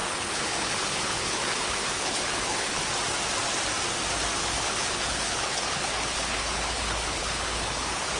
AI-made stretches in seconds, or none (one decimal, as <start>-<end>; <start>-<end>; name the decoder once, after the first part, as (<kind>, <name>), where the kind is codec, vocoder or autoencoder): 0.0-2.8 (codec, HILCodec); 4.4-8.2